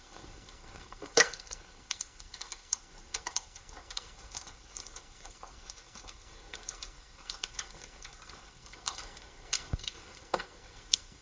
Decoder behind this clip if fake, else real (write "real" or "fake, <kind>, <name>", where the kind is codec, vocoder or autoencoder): fake, codec, SNAC